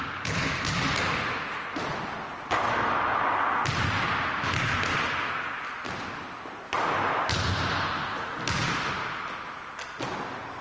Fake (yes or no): no